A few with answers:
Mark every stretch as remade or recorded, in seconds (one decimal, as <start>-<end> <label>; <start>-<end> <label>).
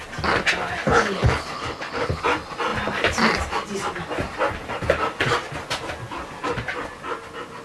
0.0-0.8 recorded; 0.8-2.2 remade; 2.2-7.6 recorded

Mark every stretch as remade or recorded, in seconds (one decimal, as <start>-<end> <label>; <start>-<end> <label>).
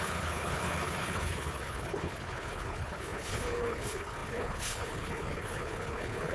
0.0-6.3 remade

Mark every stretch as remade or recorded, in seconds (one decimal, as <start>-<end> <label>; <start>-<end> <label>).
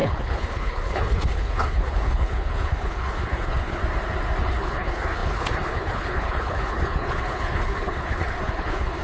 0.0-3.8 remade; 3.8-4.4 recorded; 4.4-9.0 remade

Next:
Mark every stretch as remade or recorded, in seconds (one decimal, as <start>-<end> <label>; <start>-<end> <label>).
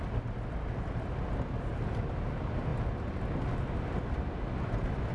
0.0-5.1 recorded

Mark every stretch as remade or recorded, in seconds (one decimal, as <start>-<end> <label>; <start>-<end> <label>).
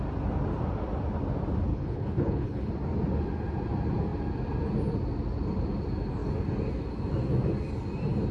0.0-1.7 recorded; 1.7-2.7 remade; 2.7-8.3 recorded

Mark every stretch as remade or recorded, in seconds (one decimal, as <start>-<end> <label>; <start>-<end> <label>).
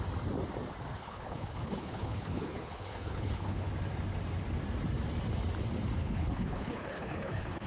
0.0-0.9 recorded; 0.9-3.7 remade; 3.7-6.0 recorded; 6.0-7.7 remade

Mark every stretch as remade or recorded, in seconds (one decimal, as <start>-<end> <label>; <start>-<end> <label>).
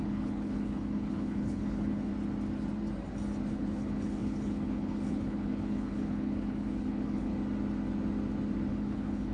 0.0-2.1 remade; 2.1-3.5 recorded; 3.5-7.3 remade; 7.3-8.7 recorded; 8.7-9.3 remade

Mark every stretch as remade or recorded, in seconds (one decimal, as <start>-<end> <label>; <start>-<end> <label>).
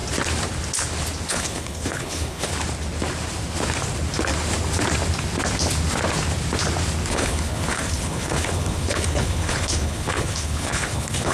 0.0-1.3 recorded; 1.3-2.5 remade; 2.5-7.1 recorded; 7.1-11.3 remade